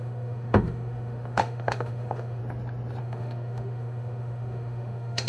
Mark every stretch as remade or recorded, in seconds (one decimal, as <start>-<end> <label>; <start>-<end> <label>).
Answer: 0.0-2.4 remade; 2.4-3.0 recorded; 3.0-5.3 remade

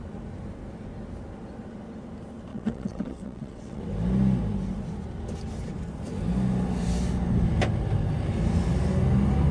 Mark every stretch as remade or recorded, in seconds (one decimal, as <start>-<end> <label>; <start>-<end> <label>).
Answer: 0.0-2.5 recorded; 2.5-3.8 remade; 3.8-9.5 recorded

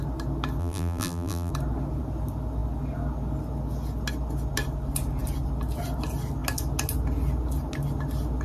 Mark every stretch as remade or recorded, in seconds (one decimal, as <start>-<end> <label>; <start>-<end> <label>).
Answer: 0.0-0.6 recorded; 0.6-1.5 remade; 1.5-8.4 recorded